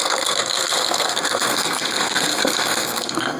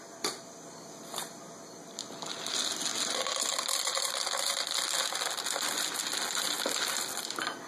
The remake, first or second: first